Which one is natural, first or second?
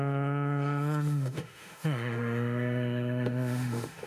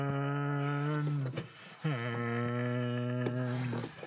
second